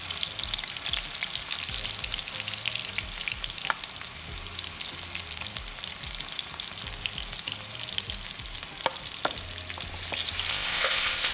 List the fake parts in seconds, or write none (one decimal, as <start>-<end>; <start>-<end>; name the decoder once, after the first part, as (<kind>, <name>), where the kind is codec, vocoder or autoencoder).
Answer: 10.5-11.3 (codec, ZipCodec)